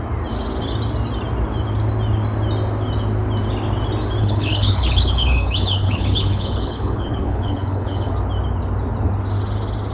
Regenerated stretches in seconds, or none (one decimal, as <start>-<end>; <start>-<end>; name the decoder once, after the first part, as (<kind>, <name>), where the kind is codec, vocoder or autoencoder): 4.2-8.1 (codec, HILCodec)